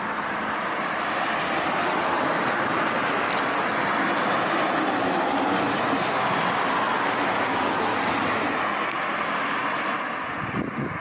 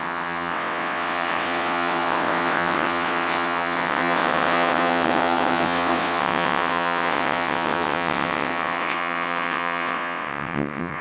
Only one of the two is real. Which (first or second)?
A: first